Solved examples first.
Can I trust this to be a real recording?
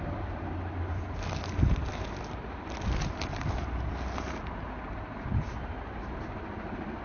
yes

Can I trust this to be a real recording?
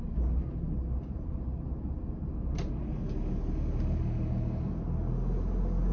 yes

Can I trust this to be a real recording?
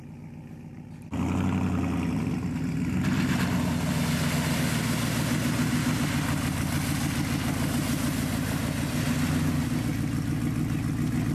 yes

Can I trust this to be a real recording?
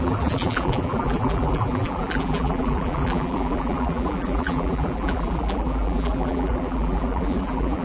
no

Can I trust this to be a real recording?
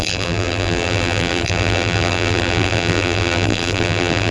no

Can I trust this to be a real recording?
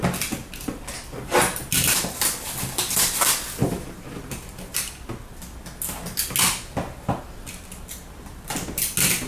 yes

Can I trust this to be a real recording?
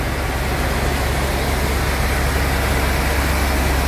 yes